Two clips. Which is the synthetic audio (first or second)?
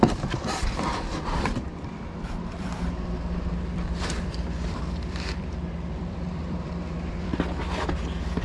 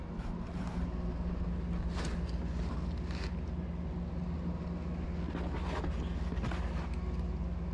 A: first